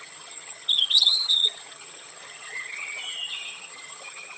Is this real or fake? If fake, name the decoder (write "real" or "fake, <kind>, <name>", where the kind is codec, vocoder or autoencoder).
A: fake, vocoder, HiFi-GAN